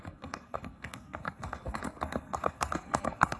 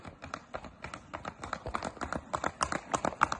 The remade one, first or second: first